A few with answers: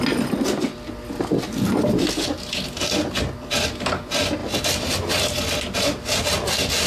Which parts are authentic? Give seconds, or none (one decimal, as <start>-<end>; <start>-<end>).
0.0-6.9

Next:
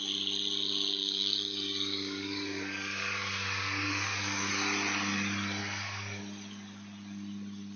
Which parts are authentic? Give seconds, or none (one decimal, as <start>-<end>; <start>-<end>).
0.0-1.0; 4.5-5.6; 6.2-7.8

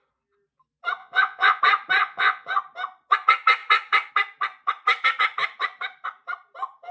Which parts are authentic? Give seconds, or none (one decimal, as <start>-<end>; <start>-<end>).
0.0-1.0; 1.6-2.0; 2.5-6.9